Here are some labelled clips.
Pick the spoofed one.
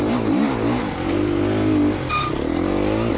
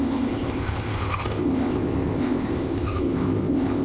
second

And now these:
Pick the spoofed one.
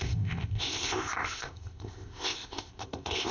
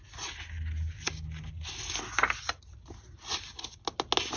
first